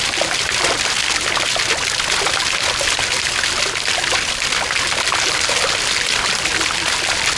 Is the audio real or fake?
real